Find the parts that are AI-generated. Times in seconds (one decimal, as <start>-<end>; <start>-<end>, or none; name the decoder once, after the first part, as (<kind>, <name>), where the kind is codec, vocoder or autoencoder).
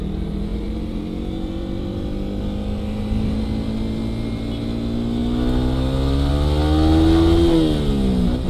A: 0.5-2.4 (vocoder, BigVGAN v2)